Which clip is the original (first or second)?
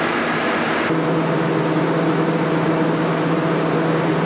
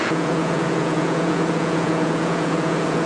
first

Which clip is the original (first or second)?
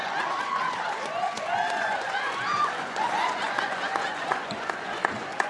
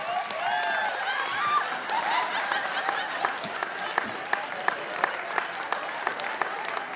second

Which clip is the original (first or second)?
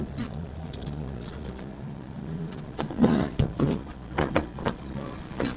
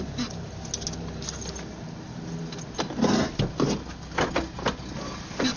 second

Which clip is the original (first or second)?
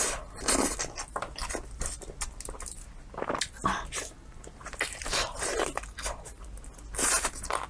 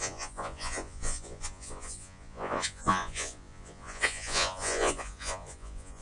first